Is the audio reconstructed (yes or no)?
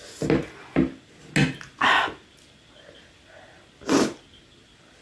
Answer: no